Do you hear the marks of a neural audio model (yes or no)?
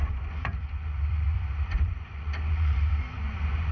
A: yes